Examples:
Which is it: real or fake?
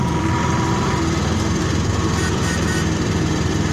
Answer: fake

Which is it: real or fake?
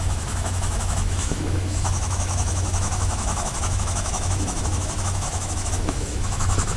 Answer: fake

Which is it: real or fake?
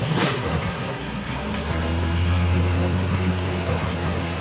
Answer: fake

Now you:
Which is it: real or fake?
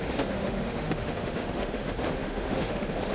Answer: fake